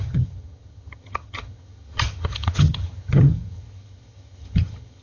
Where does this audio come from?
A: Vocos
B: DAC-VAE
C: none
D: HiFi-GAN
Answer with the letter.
D